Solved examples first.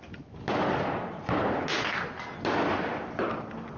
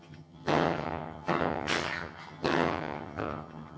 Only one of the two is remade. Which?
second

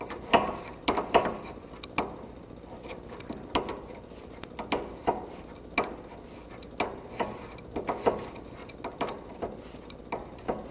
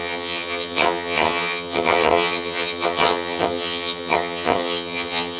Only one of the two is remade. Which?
second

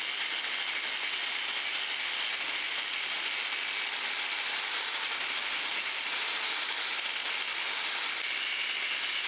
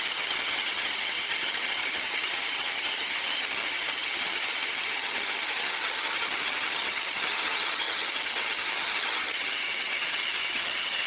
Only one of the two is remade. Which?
second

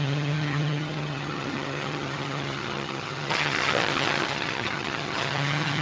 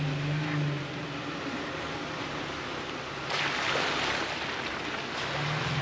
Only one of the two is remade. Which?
first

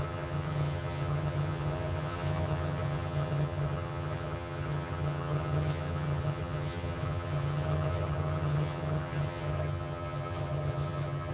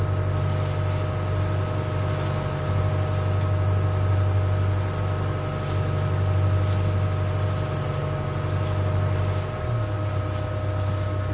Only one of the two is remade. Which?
first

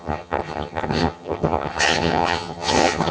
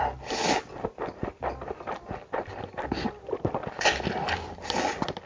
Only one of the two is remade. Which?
first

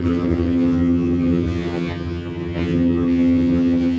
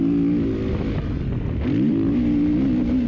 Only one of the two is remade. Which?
first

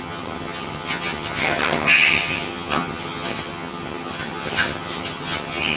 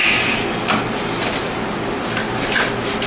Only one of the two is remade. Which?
first